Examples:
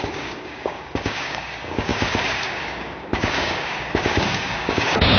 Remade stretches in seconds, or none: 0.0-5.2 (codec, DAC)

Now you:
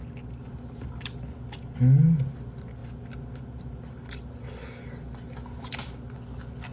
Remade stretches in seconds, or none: none